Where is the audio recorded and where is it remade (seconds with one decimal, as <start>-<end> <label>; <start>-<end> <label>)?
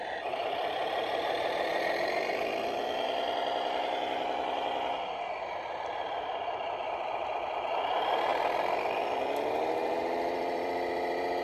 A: 0.0-1.7 remade; 1.7-6.9 recorded; 6.9-11.4 remade